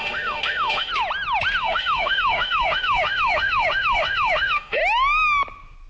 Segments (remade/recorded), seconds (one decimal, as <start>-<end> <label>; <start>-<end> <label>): 0.0-0.9 remade; 0.9-1.6 recorded; 1.6-4.8 remade; 4.8-5.9 recorded